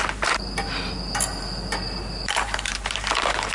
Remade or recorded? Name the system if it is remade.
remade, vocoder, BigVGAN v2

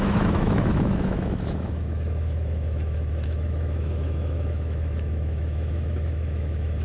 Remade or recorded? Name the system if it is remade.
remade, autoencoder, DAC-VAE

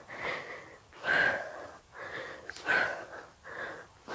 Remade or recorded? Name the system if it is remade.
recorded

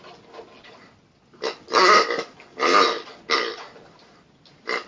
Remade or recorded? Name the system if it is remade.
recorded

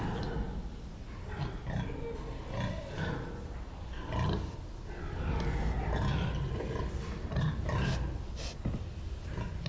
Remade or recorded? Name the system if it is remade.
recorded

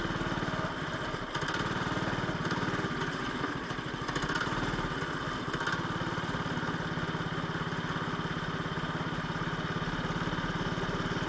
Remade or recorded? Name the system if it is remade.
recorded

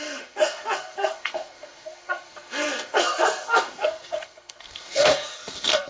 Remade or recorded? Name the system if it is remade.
remade, codec, SNAC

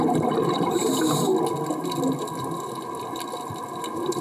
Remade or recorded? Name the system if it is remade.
recorded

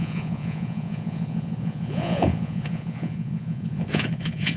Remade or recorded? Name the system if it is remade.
remade, vocoder, Vocos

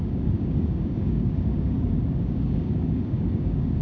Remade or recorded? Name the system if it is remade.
remade, codec, DAC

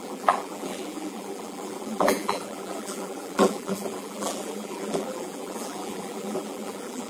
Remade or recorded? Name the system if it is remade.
remade, vocoder, BigVGAN v2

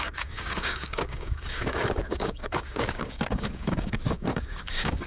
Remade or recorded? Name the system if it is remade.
remade, codec, DAC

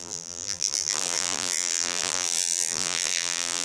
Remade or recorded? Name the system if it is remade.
remade, vocoder, BigVGAN v2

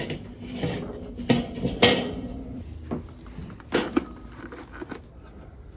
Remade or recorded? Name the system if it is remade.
recorded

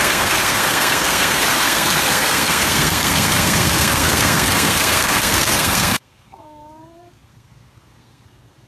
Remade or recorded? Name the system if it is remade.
remade, codec, SNAC